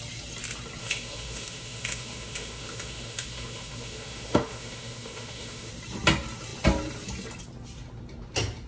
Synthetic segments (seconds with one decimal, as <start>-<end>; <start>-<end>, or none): 0.8-5.7

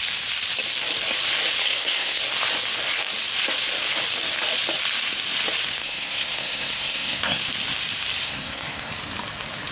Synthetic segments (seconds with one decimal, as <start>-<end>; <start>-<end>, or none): 1.6-2.2; 5.8-7.4; 8.2-8.9